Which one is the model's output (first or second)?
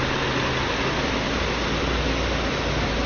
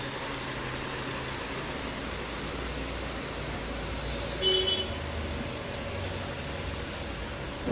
first